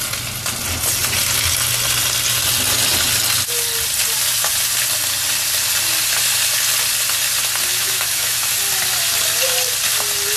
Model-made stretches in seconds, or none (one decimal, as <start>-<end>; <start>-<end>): 7.7-8.5